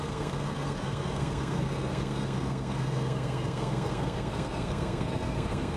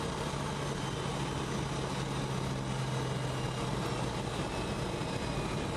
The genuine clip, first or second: second